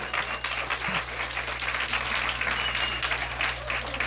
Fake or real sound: real